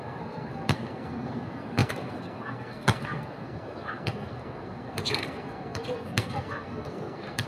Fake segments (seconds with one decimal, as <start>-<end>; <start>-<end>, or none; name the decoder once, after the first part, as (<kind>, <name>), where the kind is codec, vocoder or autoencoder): 0.0-7.5 (codec, SNAC)